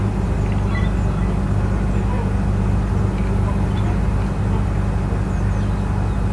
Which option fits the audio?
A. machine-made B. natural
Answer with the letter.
B